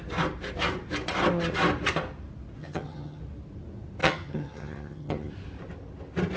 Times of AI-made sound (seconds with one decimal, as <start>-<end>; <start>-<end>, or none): 2.6-3.2; 4.0-5.3